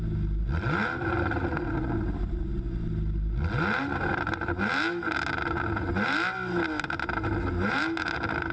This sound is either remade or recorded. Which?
recorded